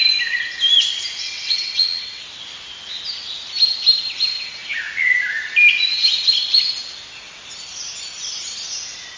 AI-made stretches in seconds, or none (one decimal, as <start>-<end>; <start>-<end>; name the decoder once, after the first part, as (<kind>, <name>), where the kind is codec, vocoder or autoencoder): 1.2-2.2 (vocoder, WaveNeXt)